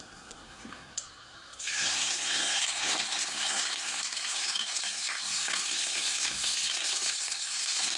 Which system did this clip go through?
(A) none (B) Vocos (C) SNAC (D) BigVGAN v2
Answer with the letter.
C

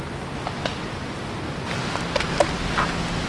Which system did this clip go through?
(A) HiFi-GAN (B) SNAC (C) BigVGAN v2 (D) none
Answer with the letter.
D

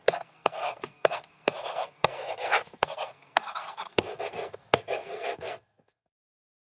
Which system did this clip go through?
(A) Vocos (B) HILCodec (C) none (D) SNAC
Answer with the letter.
D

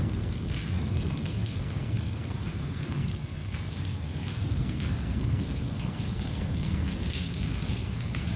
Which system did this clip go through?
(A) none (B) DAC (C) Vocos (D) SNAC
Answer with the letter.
D